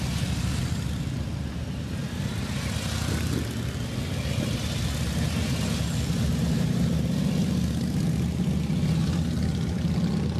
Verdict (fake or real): real